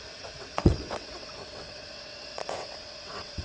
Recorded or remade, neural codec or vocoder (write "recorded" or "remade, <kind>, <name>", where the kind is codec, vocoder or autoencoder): remade, vocoder, WaveNeXt